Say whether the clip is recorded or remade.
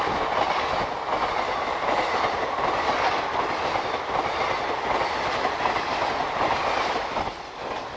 recorded